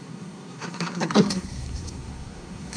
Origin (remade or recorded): remade